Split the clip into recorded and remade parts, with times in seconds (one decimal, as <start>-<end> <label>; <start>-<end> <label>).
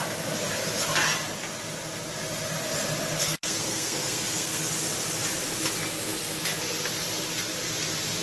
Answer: 0.0-3.2 recorded; 3.2-4.7 remade; 4.7-8.2 recorded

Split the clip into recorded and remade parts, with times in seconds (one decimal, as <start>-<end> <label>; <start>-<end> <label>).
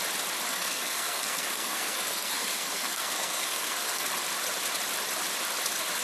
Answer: 0.0-0.5 recorded; 0.5-4.1 remade; 4.1-6.0 recorded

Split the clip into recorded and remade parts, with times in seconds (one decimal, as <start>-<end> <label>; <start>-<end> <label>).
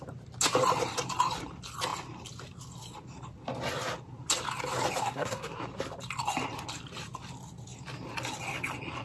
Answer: 0.0-5.0 recorded; 5.0-5.6 remade; 5.6-9.0 recorded